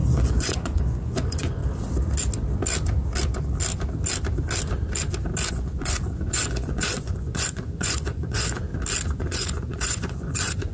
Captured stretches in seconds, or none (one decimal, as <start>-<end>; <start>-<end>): 1.6-5.5; 8.7-9.2